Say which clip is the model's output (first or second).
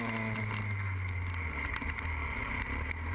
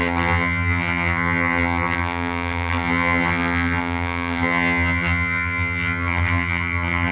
second